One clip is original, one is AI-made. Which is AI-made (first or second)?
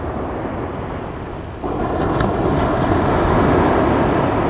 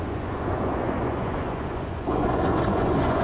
second